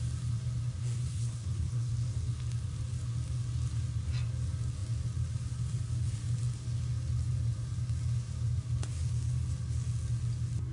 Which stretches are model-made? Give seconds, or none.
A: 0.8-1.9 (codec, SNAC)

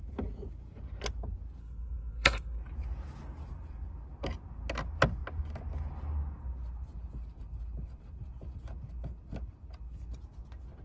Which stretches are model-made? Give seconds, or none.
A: 1.6-2.6 (codec, SNAC)